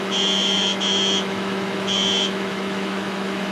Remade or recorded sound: remade